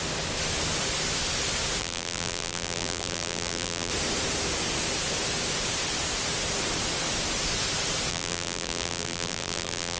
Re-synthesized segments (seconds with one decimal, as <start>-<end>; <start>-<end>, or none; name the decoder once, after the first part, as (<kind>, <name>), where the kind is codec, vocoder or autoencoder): 1.8-3.9 (vocoder, BigVGAN v2); 8.1-10.0